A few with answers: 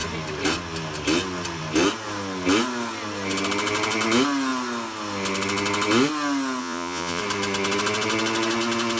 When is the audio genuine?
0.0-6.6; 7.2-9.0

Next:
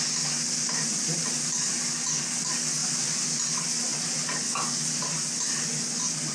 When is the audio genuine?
0.0-6.3

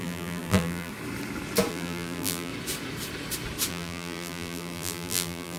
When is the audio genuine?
0.9-1.7; 2.5-3.7